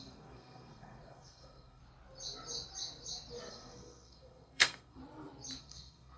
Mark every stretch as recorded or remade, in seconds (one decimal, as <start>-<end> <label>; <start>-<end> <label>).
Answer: 0.0-1.8 remade; 1.8-3.5 recorded; 3.5-5.0 remade; 5.0-5.6 recorded; 5.6-6.2 remade